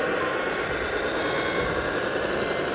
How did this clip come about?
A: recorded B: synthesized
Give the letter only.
A